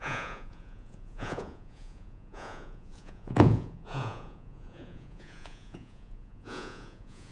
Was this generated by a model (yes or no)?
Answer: yes